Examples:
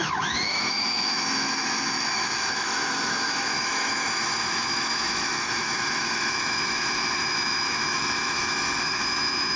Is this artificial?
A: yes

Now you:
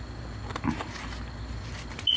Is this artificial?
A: no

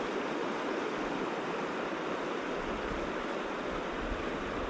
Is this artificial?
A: no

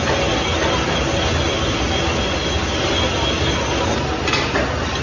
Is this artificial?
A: no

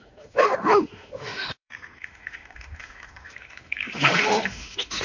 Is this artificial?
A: yes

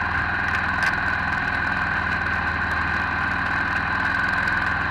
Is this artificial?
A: no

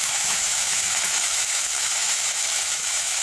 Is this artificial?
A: yes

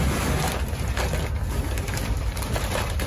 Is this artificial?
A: no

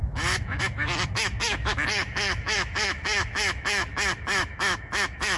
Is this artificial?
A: yes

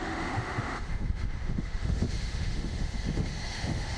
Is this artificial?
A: yes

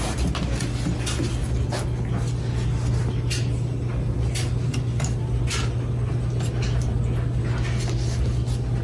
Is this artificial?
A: no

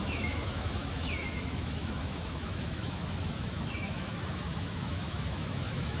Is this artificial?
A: yes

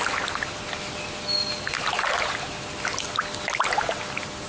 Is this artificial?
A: no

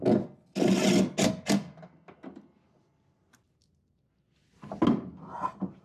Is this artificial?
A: no